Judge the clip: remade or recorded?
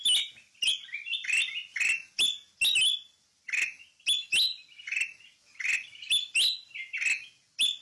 recorded